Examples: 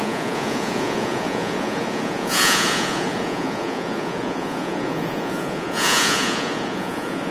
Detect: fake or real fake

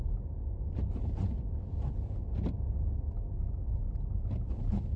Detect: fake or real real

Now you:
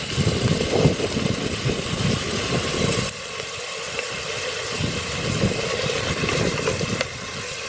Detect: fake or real real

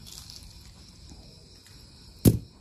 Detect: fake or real real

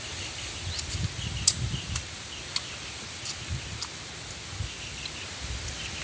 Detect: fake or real real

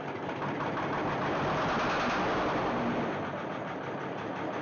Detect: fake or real real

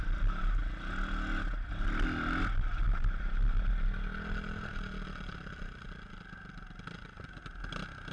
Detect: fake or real real